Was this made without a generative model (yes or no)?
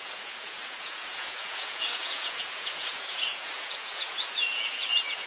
no